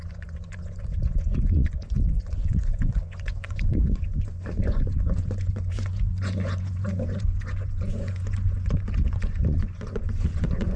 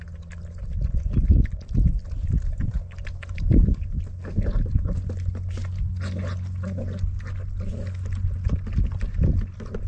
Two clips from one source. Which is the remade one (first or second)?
first